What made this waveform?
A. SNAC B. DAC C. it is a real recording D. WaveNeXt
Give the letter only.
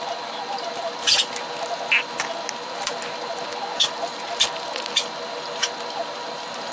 C